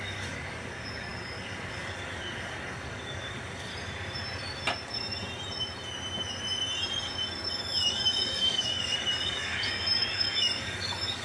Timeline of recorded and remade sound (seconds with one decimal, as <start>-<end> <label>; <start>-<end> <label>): 0.0-3.7 remade; 3.7-7.5 recorded; 7.5-11.2 remade